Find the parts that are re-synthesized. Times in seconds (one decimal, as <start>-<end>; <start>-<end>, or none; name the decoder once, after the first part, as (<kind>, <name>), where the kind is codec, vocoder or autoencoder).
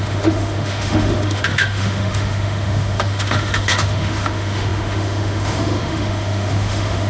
0.0-7.1 (autoencoder, DAC-VAE)